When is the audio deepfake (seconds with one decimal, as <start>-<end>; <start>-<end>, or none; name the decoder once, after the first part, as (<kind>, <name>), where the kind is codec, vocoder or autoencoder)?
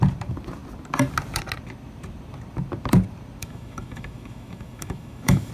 3.4-5.5 (autoencoder, DAC-VAE)